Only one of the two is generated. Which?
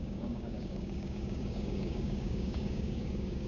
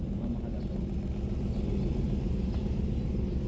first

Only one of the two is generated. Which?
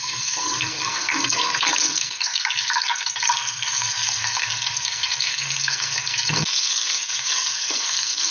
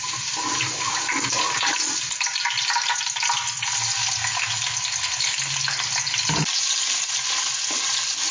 first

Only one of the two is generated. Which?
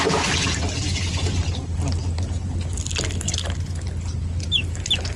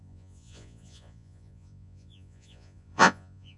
second